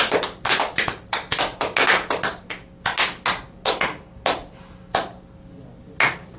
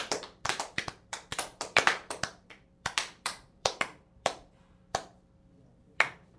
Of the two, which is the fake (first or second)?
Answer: second